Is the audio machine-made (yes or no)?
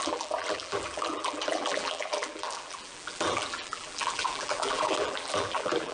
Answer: yes